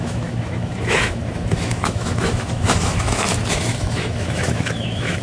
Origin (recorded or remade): remade